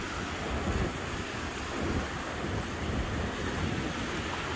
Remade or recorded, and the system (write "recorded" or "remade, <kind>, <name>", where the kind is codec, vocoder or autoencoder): recorded